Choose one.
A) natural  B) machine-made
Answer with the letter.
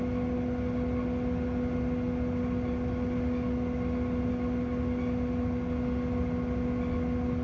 A